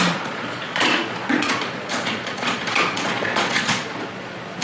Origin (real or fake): fake